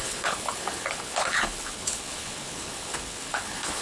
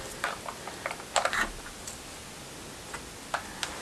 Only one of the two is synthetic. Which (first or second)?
first